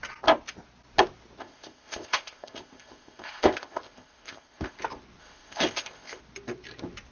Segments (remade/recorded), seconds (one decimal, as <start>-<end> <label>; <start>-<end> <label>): 0.0-1.4 recorded; 1.4-4.8 remade; 4.8-5.2 recorded; 5.2-6.2 remade; 6.2-7.1 recorded